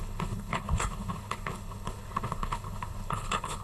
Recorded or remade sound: remade